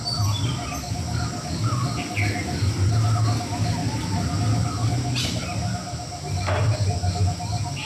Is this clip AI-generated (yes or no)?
no